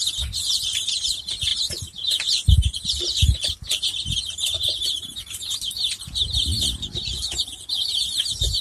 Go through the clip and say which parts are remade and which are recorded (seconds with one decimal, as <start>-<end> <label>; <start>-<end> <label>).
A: 0.0-1.5 recorded; 1.5-6.0 remade; 6.0-8.6 recorded